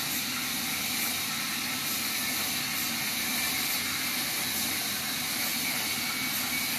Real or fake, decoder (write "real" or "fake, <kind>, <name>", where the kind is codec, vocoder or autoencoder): real